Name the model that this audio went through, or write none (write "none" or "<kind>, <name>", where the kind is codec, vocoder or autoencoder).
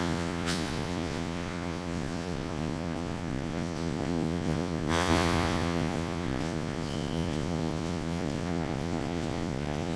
vocoder, Vocos